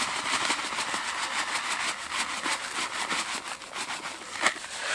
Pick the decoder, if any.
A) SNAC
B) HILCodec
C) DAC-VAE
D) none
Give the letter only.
D